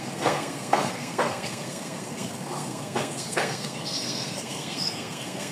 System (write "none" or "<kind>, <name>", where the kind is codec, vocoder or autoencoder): codec, SNAC